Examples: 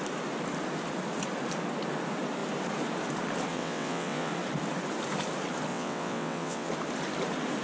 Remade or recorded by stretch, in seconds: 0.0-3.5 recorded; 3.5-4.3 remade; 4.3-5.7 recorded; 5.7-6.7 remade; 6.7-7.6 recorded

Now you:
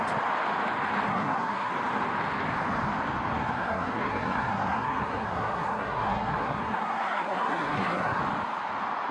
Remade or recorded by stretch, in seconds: 0.0-1.1 recorded; 1.1-1.7 remade; 1.7-3.4 recorded; 3.4-8.2 remade; 8.2-9.1 recorded

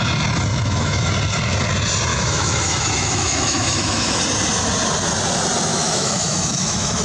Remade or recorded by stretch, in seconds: 0.0-0.5 recorded; 0.5-1.1 remade; 1.1-2.1 recorded; 2.1-4.2 remade; 4.2-5.7 recorded; 5.7-7.0 remade